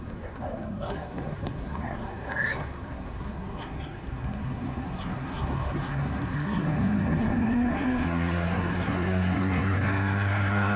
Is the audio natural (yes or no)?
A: no